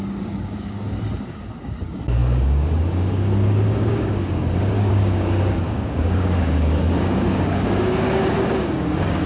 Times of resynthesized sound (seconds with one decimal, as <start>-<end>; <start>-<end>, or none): 0.0-9.3